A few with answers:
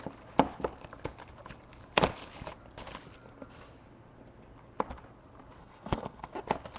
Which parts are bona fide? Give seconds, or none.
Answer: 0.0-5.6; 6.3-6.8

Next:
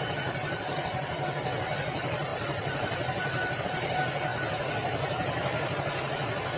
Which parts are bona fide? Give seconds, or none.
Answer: 0.0-6.6

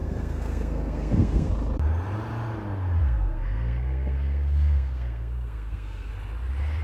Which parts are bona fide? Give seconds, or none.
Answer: 1.5-3.0; 6.1-6.8

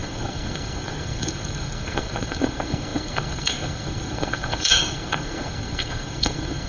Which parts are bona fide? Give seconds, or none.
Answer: none

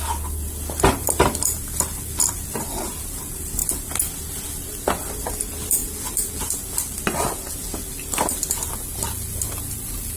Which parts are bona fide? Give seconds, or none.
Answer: 0.0-10.2

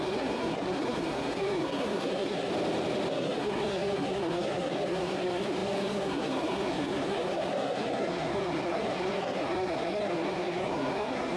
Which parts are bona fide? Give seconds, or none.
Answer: 2.5-3.1